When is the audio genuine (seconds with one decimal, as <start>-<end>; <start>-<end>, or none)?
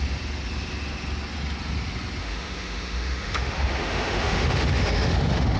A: 0.0-2.2